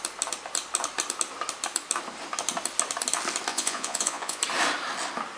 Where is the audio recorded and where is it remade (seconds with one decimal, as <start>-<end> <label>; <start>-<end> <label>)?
0.0-3.5 recorded; 3.5-4.4 remade; 4.4-5.4 recorded